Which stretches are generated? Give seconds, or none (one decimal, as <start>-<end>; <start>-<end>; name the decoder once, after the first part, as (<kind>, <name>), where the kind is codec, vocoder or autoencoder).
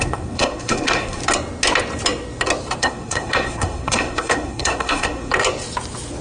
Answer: 0.0-1.2 (codec, SNAC); 2.8-5.3